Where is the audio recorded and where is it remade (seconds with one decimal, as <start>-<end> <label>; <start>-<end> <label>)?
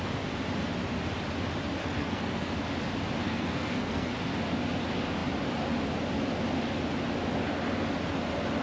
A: 0.0-1.8 recorded; 1.8-2.5 remade; 2.5-3.2 recorded; 3.2-4.1 remade; 4.1-8.6 recorded